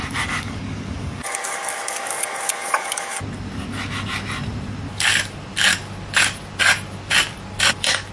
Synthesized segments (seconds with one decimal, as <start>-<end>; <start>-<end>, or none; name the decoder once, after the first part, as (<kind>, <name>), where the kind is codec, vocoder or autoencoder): 0.0-3.2 (codec, DAC)